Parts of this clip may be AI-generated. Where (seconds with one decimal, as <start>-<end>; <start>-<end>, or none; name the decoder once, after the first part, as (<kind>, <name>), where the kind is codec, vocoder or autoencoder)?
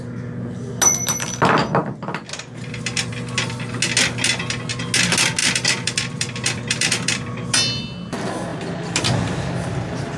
5.4-7.8 (vocoder, BigVGAN v2)